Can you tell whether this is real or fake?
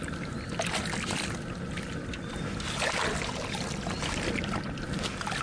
real